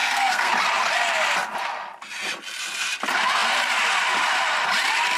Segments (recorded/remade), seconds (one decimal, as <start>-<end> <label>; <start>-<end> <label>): 0.0-0.5 remade; 0.5-5.2 recorded